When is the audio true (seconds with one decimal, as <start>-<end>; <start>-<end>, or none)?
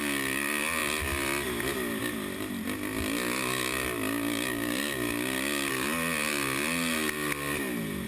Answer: 0.0-8.1